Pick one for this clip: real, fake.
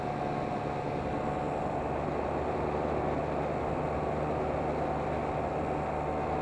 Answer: real